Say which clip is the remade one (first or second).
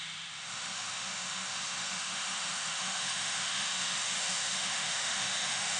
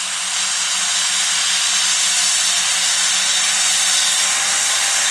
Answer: first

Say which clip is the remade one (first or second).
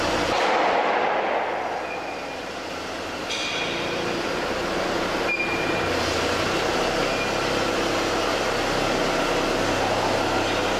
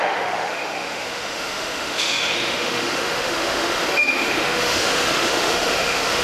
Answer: second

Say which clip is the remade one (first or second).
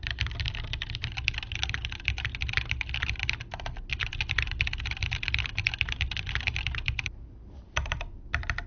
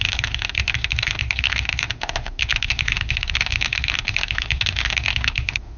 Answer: second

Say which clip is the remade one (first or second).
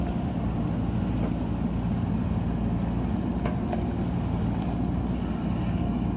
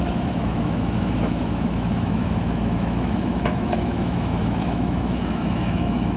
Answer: second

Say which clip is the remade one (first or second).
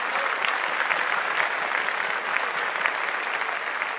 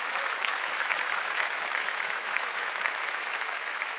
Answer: second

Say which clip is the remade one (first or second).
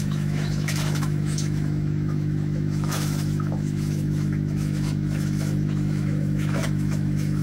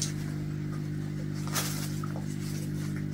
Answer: first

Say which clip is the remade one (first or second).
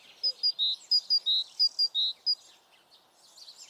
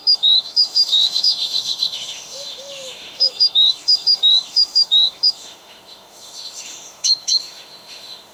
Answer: second